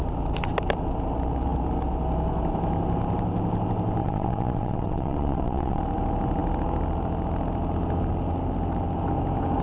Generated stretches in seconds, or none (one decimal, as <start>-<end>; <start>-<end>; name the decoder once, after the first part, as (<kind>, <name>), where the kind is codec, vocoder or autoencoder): 4.0-5.8 (vocoder, WaveNeXt)